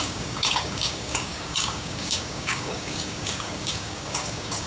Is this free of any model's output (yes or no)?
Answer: no